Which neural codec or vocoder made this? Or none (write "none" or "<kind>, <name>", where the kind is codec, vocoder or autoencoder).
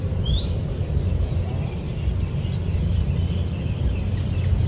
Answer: none